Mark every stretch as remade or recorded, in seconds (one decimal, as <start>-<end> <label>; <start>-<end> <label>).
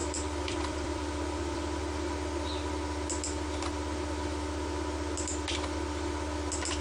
0.0-1.8 remade; 1.8-6.8 recorded